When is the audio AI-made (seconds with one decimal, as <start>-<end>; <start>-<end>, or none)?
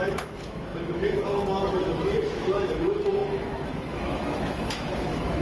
0.0-5.4